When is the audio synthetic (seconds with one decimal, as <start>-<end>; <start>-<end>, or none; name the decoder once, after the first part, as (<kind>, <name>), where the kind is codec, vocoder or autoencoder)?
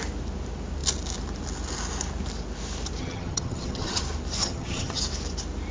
3.0-4.0 (vocoder, HiFi-GAN); 4.4-5.0